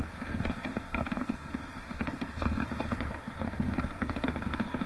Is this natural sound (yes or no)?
no